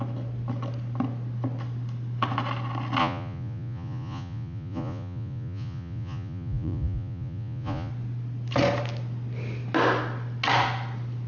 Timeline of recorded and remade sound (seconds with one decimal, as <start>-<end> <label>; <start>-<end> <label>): 0.0-3.0 recorded; 3.0-7.9 remade; 7.9-11.3 recorded